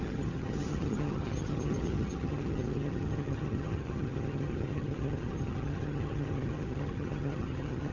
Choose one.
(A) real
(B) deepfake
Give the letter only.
B